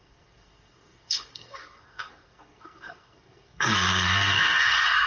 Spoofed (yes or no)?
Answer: yes